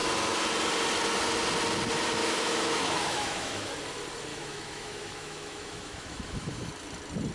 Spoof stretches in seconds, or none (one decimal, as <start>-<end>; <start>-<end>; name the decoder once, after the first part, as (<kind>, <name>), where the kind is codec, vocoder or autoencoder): 2.2-3.7 (autoencoder, DAC-VAE); 4.3-6.7